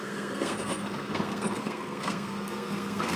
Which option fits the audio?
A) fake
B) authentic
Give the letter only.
A